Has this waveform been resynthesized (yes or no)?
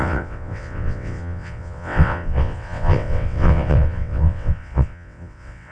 yes